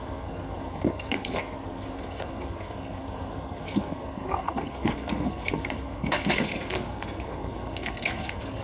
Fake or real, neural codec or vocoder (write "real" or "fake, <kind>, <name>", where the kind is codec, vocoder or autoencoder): fake, codec, SNAC